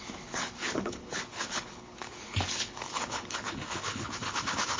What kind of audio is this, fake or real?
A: fake